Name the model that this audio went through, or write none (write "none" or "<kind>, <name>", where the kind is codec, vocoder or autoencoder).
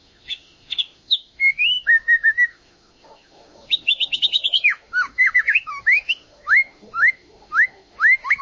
autoencoder, DAC-VAE